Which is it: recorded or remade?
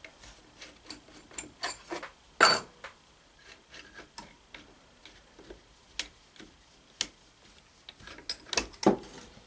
recorded